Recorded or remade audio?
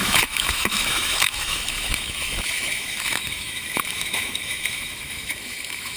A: remade